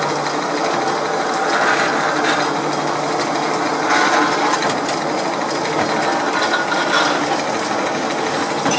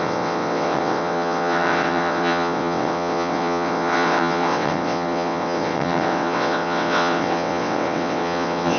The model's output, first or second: second